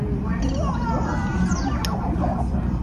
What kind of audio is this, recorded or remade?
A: recorded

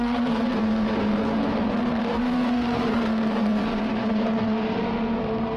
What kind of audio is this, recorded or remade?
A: remade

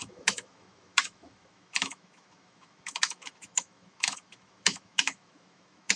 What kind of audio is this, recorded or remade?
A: remade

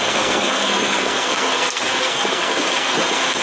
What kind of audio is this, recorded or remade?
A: remade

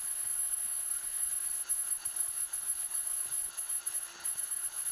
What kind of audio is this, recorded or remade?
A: remade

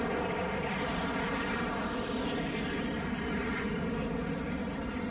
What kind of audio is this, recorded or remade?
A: recorded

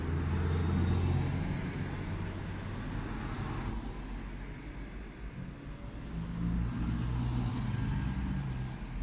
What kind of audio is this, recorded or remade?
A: recorded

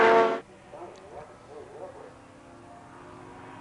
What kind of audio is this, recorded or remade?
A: recorded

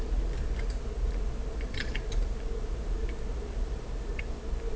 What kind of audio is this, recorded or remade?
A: recorded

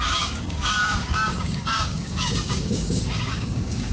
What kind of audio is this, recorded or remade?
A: remade